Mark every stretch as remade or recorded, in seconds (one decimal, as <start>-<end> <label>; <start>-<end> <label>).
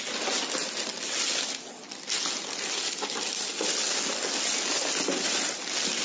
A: 0.0-6.0 recorded